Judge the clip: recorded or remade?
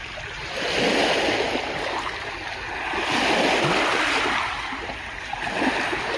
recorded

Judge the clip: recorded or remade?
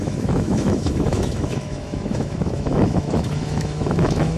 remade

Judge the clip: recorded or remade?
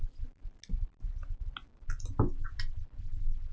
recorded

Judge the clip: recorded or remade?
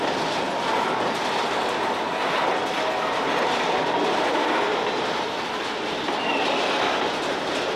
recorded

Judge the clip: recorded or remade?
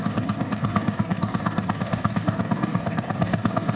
remade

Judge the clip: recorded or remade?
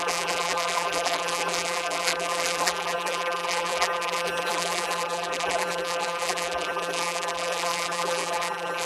remade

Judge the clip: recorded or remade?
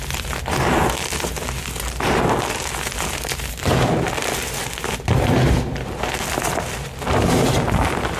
recorded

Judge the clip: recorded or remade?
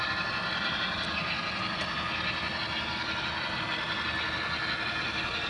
recorded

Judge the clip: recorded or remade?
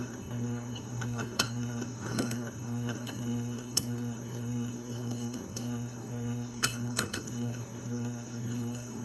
remade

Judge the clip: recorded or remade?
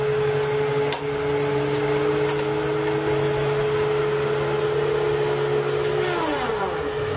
recorded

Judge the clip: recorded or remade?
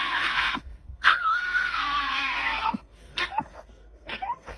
remade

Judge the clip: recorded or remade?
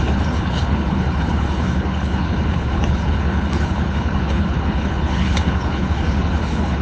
remade